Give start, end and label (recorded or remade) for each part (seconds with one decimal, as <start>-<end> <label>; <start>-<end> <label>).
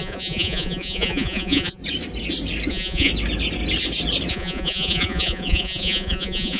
0.0-1.8 remade; 1.8-2.7 recorded; 2.7-3.1 remade; 3.1-4.3 recorded; 4.3-6.6 remade